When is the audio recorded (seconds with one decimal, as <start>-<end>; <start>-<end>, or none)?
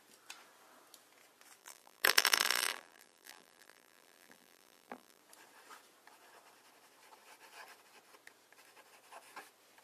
0.0-1.6; 5.2-9.8